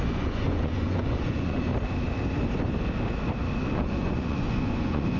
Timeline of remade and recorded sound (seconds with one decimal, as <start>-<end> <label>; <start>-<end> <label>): 0.0-1.7 remade; 1.7-3.7 recorded; 3.7-5.2 remade